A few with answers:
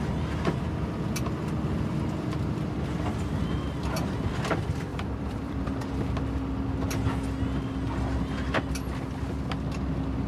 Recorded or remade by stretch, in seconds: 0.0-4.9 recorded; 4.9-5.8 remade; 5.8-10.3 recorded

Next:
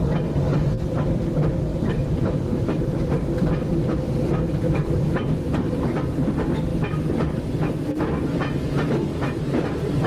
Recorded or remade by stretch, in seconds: 0.0-1.7 recorded; 1.7-3.2 remade; 3.2-9.1 recorded; 9.1-10.1 remade

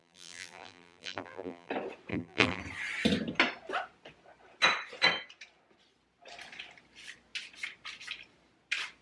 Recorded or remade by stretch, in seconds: 0.0-1.7 remade; 1.7-2.1 recorded; 2.1-2.6 remade; 2.6-9.0 recorded